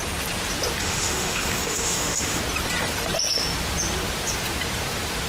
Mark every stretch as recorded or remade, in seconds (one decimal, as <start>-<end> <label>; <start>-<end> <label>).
0.0-0.8 recorded; 0.8-2.4 remade; 2.4-5.3 recorded